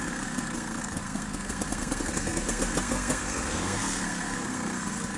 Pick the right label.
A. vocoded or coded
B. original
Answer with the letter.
A